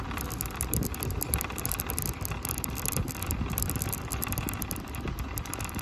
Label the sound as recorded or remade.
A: remade